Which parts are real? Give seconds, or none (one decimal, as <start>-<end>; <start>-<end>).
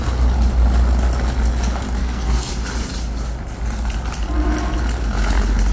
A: 0.0-2.0; 2.5-5.7